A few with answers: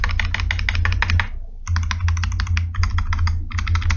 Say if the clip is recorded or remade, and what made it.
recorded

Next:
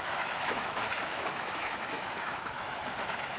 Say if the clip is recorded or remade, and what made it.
remade, autoencoder, DAC-VAE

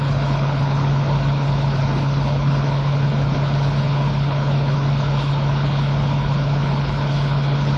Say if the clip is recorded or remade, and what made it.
remade, codec, HILCodec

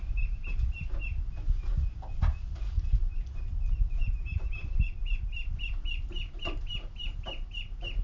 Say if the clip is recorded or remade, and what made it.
recorded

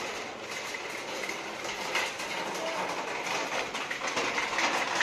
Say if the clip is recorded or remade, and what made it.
recorded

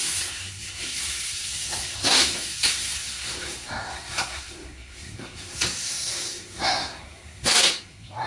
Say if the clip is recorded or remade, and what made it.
remade, codec, SNAC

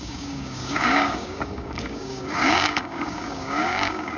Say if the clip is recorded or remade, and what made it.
remade, codec, DAC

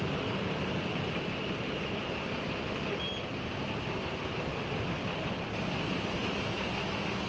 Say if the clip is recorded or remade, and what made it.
recorded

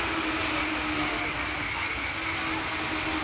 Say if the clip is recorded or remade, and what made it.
recorded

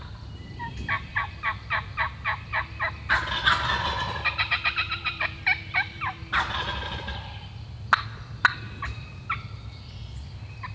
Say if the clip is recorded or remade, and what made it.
recorded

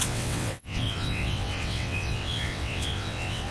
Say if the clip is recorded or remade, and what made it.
remade, vocoder, WaveNeXt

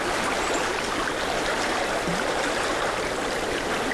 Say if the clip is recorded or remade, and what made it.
recorded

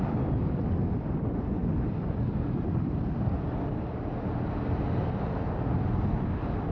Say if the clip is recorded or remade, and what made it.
recorded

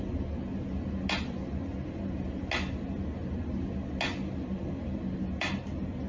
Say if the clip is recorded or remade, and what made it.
recorded